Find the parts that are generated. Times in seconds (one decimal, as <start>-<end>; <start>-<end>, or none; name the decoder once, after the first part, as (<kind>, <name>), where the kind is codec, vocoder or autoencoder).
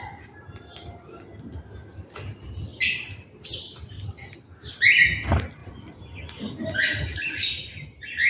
none